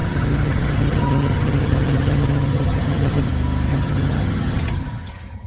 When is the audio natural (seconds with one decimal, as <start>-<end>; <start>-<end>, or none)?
3.3-3.7